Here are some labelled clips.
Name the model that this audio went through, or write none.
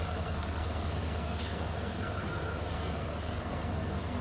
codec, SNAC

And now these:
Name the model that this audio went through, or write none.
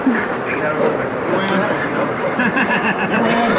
vocoder, BigVGAN v2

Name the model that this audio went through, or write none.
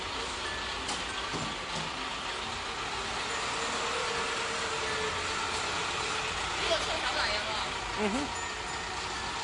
none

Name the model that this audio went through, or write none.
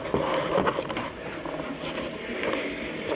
none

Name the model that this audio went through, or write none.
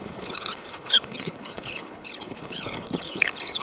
codec, HILCodec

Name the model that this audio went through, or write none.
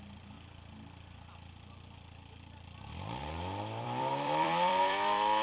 vocoder, BigVGAN v2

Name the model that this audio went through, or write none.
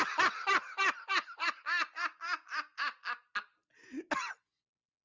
none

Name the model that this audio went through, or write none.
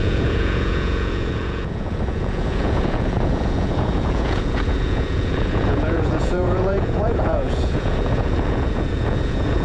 vocoder, Vocos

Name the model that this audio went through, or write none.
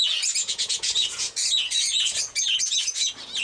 vocoder, Vocos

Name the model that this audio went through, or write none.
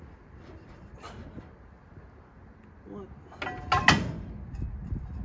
none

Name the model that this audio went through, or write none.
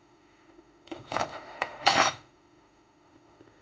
autoencoder, DAC-VAE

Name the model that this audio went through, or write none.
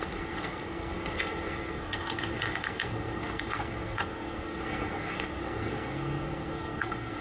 codec, SNAC